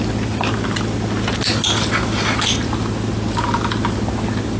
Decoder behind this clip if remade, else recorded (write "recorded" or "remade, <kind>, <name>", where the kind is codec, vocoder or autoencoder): recorded